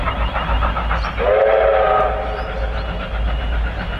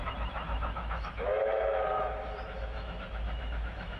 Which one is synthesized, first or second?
second